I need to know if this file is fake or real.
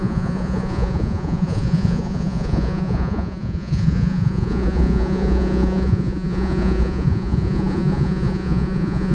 fake